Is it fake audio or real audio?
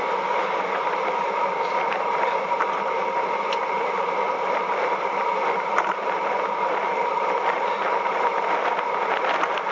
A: real